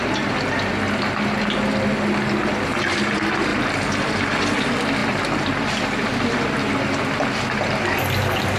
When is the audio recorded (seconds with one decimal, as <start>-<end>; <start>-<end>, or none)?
0.0-8.6